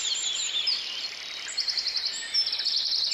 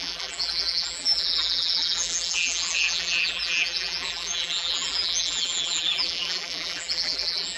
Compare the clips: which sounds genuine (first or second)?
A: first